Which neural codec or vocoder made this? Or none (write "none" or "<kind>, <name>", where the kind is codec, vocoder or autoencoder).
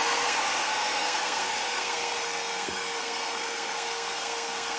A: codec, SNAC